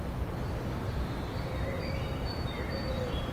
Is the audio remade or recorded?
recorded